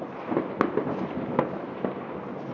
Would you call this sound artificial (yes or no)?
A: no